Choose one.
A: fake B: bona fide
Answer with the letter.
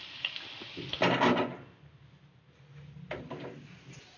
B